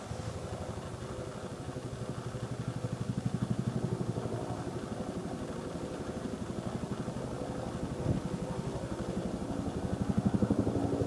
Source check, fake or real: real